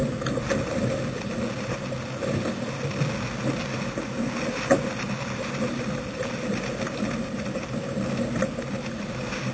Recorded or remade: recorded